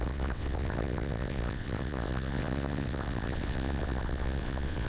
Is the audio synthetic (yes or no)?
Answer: yes